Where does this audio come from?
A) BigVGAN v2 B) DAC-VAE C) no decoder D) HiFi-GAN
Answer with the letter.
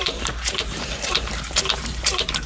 A